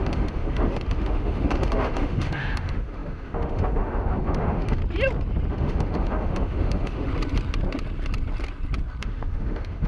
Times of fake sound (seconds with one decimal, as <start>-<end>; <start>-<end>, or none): 0.0-4.8; 5.5-7.1; 9.0-9.9